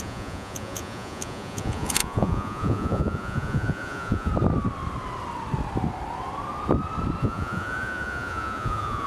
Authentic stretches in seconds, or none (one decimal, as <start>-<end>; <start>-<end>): 4.3-7.2